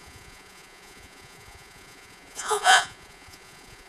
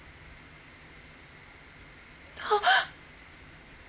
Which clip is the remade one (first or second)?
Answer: first